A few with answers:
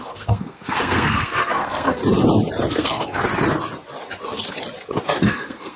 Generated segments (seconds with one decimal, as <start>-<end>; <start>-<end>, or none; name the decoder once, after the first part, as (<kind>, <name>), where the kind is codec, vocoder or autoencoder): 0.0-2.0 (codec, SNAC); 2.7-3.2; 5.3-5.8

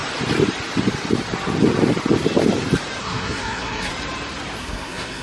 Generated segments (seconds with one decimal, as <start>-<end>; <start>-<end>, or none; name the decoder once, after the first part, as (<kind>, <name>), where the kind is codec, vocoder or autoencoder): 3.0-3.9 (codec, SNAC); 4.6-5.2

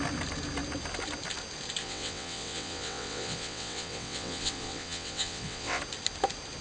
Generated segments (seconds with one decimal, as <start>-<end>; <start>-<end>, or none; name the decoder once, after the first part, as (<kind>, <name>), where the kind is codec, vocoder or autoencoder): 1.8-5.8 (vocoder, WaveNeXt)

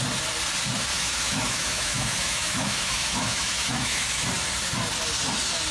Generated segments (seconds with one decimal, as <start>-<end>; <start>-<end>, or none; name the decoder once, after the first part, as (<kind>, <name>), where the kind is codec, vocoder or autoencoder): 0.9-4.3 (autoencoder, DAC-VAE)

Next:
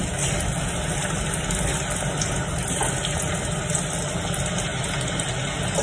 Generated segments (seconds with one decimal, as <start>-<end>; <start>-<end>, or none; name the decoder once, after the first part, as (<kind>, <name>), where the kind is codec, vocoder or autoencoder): none